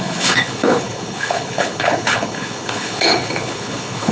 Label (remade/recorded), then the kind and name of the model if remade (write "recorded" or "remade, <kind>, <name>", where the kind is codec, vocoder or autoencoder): remade, codec, HILCodec